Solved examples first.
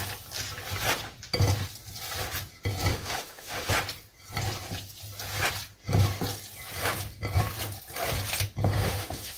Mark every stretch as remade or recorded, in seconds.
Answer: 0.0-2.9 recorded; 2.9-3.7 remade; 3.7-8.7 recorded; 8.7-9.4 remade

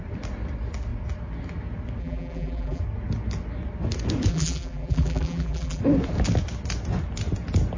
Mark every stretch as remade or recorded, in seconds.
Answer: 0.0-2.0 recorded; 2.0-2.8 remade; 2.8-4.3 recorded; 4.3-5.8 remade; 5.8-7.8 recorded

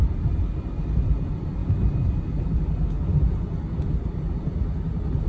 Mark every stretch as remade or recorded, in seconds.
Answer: 0.0-5.3 recorded

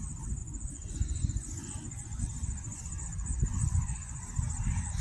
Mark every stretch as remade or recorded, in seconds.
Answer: 0.0-0.4 recorded; 0.4-2.2 remade; 2.2-2.7 recorded; 2.7-4.3 remade; 4.3-5.0 recorded

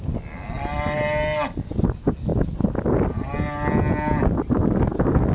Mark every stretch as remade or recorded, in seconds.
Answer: 0.0-5.3 recorded

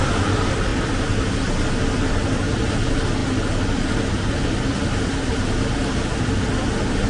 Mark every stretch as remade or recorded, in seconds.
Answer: 0.0-7.1 recorded